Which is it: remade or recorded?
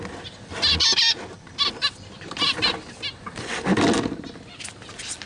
recorded